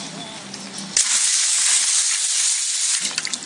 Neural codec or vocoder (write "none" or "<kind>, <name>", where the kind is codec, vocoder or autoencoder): none